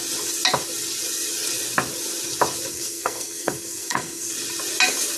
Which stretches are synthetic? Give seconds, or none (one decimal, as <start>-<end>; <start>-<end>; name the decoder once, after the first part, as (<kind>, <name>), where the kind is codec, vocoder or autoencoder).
2.7-4.3 (codec, SNAC)